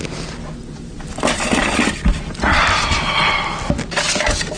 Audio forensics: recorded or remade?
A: recorded